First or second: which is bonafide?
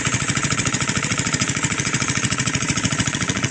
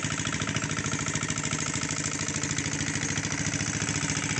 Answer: second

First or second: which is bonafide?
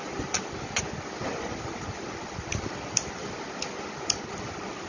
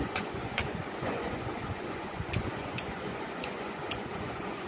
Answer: first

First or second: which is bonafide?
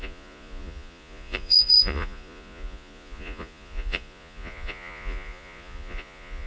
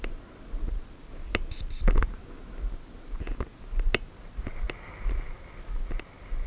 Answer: second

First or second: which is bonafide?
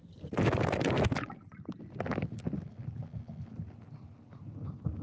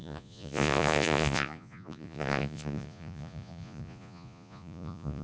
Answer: first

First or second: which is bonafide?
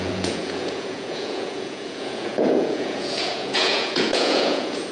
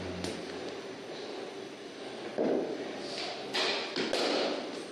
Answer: second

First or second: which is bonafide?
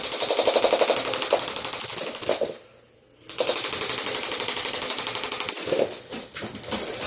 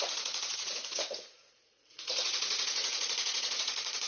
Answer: first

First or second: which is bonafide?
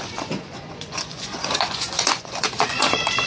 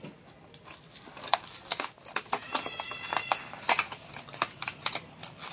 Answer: second